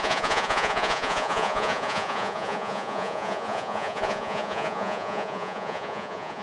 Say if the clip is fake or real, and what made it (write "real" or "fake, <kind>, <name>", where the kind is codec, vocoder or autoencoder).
fake, vocoder, Vocos